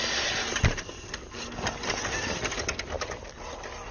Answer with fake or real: real